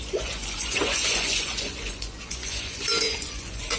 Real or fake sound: fake